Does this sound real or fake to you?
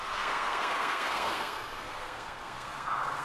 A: fake